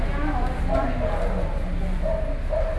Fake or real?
real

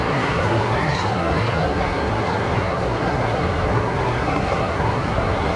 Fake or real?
fake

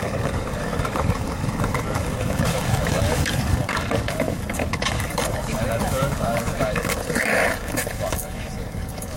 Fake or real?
fake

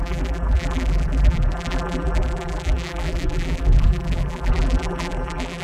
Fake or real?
fake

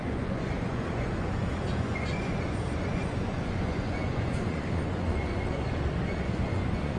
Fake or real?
fake